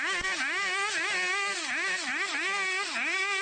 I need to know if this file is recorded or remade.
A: recorded